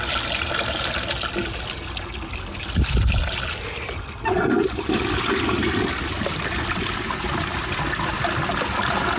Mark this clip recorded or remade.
recorded